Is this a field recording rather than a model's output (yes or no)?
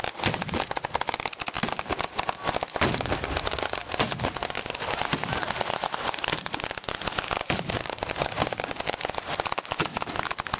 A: yes